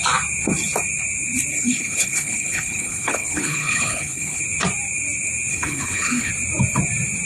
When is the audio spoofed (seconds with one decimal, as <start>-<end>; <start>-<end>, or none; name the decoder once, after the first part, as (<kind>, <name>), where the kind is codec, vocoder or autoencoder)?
1.5-4.4 (codec, HILCodec); 5.5-6.3